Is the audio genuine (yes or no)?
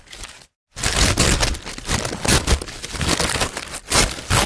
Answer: yes